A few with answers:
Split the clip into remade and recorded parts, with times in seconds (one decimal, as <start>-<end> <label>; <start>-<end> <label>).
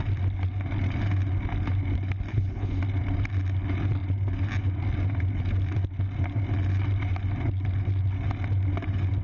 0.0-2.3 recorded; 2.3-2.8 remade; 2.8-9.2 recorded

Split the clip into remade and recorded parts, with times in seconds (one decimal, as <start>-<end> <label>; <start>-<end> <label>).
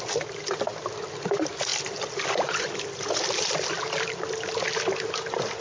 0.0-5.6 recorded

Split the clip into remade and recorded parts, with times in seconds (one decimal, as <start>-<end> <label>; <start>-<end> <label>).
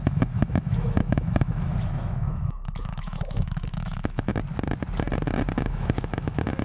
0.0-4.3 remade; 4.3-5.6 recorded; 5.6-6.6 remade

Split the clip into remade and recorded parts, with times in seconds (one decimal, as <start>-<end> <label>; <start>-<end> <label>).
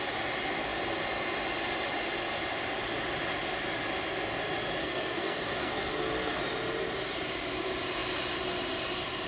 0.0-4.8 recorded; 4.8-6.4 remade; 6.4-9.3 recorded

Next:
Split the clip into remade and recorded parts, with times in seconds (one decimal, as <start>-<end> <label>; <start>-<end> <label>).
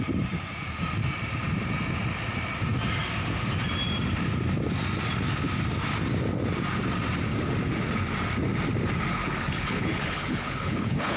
0.0-9.1 recorded; 9.1-11.2 remade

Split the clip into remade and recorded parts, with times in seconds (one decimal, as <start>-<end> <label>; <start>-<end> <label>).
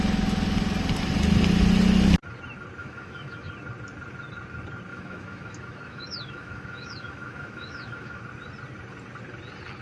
0.0-2.8 recorded; 2.8-3.5 remade; 3.5-4.9 recorded; 4.9-8.2 remade; 8.2-9.8 recorded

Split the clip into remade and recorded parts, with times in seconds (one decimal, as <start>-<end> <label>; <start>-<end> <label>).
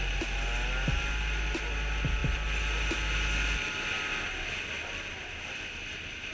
0.0-6.3 recorded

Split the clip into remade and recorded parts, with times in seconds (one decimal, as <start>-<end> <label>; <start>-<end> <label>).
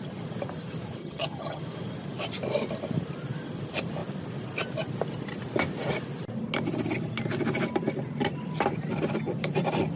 0.0-1.0 recorded; 1.0-1.6 remade; 1.6-10.0 recorded